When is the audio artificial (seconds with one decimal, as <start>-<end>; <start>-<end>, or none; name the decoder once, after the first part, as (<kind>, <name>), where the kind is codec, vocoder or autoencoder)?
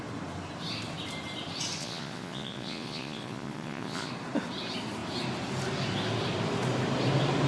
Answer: 1.8-4.1 (vocoder, Vocos)